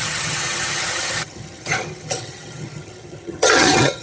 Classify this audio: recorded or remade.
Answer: remade